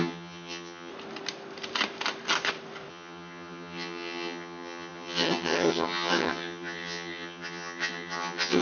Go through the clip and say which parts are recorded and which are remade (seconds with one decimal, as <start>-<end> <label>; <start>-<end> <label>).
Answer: 0.0-0.9 remade; 0.9-2.9 recorded; 2.9-8.6 remade